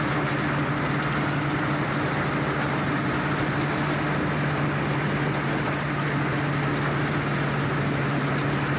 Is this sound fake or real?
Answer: real